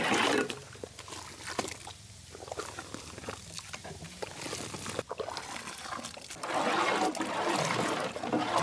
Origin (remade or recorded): recorded